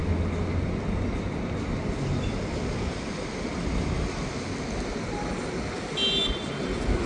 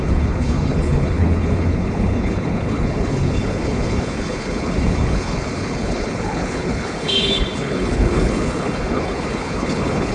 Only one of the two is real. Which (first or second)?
first